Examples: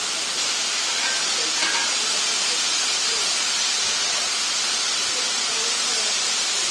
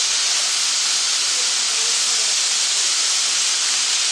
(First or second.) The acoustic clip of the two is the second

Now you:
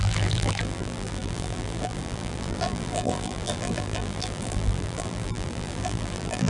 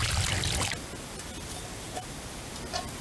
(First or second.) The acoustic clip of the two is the second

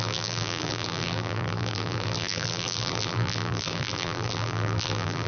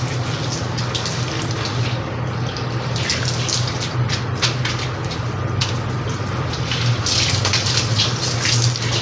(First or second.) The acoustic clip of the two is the second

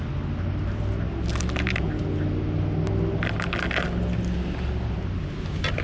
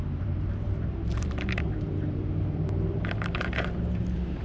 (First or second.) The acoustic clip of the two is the first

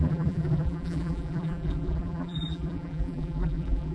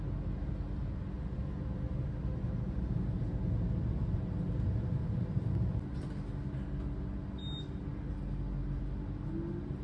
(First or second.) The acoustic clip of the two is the second